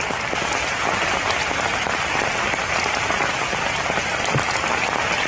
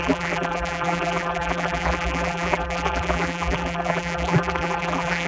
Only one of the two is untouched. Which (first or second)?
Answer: first